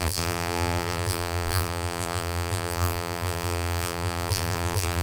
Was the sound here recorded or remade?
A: remade